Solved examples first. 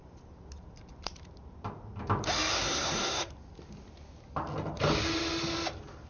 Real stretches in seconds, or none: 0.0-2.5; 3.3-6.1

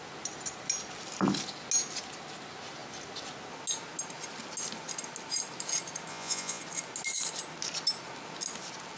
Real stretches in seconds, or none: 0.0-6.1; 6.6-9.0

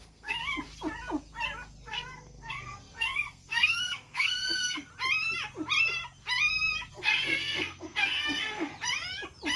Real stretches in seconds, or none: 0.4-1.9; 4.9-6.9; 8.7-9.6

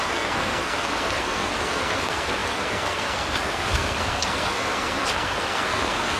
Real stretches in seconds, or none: none